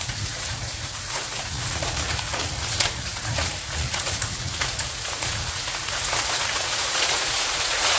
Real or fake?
fake